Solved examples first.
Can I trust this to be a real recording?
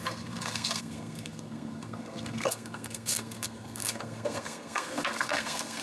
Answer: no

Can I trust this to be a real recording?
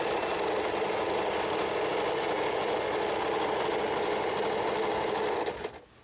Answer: yes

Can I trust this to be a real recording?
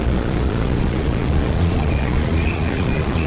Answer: no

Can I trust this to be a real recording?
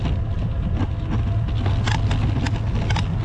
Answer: yes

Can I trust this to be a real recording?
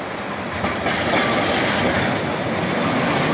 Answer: yes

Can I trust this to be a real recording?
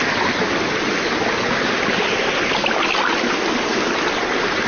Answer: yes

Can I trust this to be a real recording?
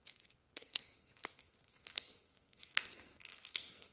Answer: no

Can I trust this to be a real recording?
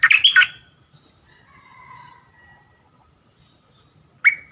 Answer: yes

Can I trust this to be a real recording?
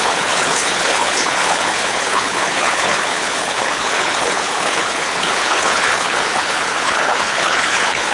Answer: no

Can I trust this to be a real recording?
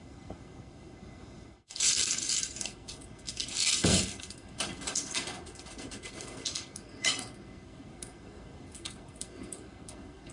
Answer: no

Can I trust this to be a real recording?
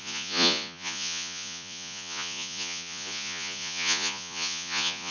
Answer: no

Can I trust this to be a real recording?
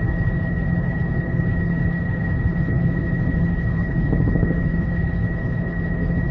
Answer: no